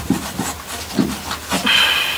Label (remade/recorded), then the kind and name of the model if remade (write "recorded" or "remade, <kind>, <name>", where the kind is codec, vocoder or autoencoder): recorded